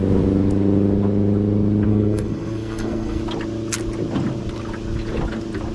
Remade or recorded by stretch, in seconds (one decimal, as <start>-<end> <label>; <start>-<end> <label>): 0.0-1.9 recorded; 1.9-3.2 remade; 3.2-5.7 recorded